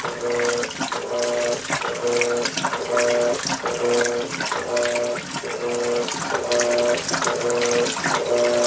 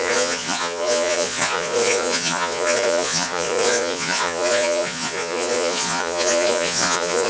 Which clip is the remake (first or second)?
second